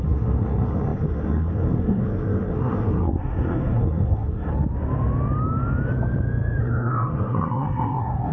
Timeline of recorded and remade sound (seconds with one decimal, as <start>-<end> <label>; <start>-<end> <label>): 0.0-4.5 remade; 4.5-6.6 recorded; 6.6-8.3 remade